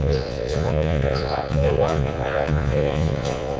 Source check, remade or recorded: remade